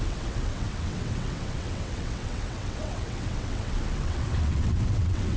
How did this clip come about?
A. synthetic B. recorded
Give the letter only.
A